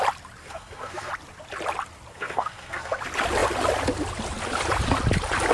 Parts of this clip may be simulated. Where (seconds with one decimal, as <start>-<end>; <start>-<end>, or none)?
0.4-1.1; 2.1-3.0